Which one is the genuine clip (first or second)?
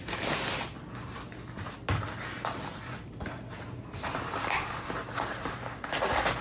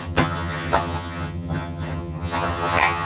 first